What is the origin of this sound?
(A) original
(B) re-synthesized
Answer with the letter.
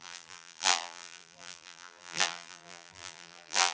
B